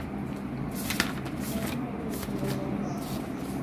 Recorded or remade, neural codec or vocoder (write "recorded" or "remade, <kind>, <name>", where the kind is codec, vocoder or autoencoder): recorded